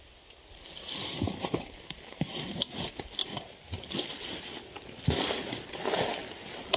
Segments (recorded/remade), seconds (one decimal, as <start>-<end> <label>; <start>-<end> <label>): 0.0-3.2 recorded; 3.2-5.7 remade; 5.7-6.8 recorded